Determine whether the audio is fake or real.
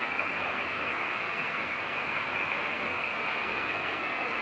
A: fake